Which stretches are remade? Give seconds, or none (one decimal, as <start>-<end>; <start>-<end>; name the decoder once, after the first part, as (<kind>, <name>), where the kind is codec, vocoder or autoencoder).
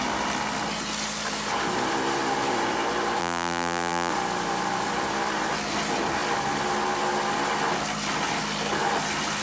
3.2-4.1 (vocoder, BigVGAN v2)